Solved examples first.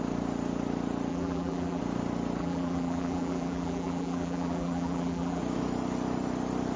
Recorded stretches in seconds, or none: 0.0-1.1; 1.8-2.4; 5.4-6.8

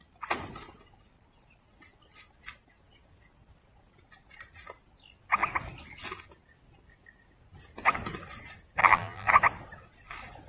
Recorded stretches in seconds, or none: 0.0-8.8; 9.3-10.5

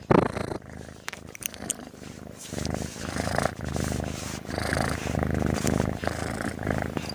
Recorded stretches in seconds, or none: 0.0-0.4; 4.7-7.1

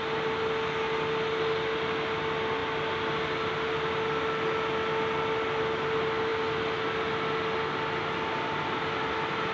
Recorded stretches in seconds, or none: 0.0-9.5

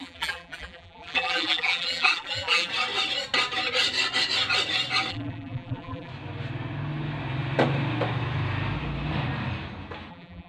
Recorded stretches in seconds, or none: 2.7-5.1; 6.1-10.1

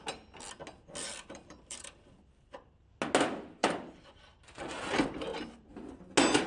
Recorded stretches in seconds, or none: 0.0-1.0; 2.9-3.6; 4.6-5.3; 5.9-6.5

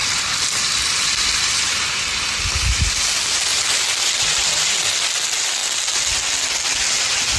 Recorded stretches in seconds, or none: 2.5-3.5; 4.7-7.4